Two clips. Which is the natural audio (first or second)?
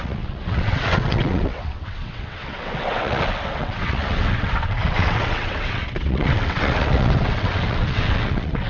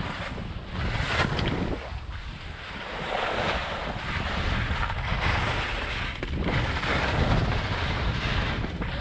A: second